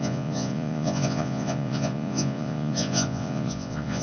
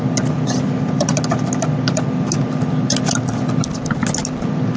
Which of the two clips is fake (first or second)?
first